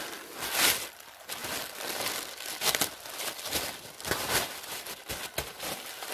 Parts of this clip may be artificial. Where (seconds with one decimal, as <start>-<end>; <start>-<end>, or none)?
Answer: none